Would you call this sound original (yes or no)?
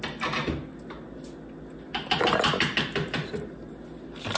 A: yes